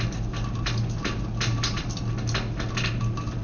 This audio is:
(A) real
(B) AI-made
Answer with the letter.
A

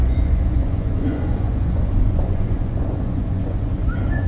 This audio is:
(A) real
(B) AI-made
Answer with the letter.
B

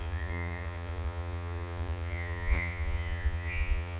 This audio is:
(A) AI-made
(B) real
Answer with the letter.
A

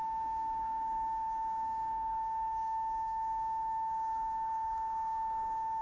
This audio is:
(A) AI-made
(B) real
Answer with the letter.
A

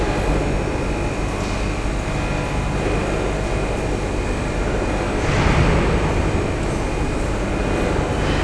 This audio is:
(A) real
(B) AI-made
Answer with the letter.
A